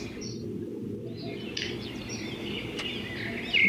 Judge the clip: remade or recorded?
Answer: recorded